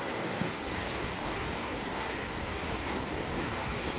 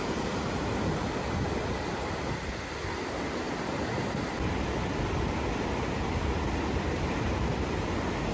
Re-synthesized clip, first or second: first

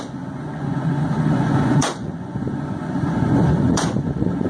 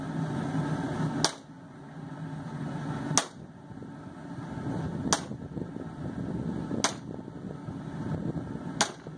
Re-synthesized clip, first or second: first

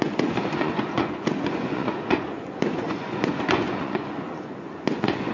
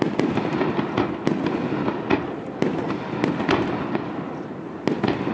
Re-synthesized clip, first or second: first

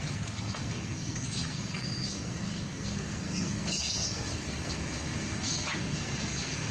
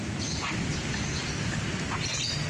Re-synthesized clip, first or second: first